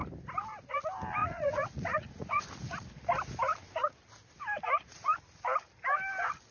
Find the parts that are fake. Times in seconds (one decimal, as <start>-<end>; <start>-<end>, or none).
1.2-2.4